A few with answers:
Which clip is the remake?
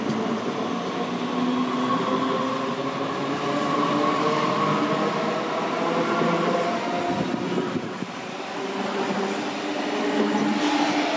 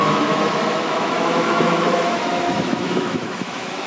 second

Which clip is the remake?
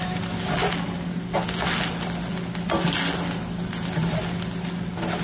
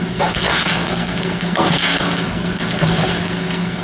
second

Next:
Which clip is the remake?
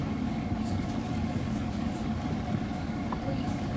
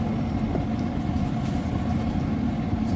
first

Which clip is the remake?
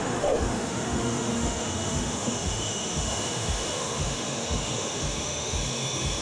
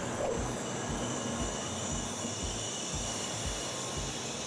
first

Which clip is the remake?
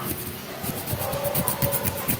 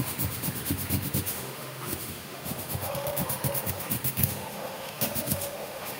second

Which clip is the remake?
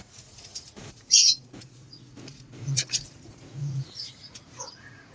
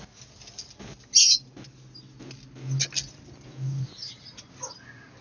first